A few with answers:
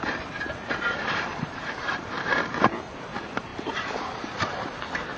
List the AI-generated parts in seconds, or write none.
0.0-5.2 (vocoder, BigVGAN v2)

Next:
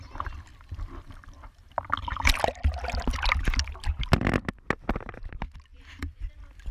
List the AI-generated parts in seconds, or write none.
5.7-6.3 (vocoder, BigVGAN v2)